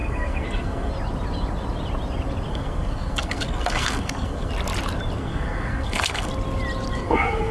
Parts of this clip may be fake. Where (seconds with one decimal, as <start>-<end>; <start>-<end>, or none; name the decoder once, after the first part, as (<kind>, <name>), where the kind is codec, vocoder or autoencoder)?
0.0-0.9 (codec, SNAC); 2.5-4.5; 5.2-6.3; 6.9-7.5